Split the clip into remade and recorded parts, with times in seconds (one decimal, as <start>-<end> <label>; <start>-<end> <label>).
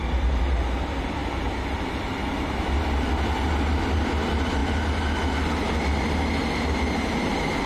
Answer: 0.0-7.7 recorded